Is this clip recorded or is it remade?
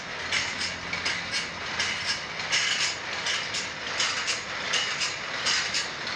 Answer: recorded